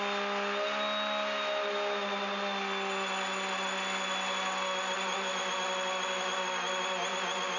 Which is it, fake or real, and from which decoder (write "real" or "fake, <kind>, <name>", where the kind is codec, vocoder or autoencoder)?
real